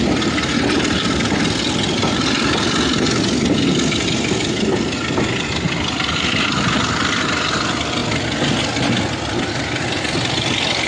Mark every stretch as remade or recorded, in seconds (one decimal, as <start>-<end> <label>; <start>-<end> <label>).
0.0-8.0 remade; 8.0-9.3 recorded; 9.3-10.9 remade